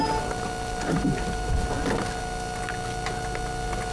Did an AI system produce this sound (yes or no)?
no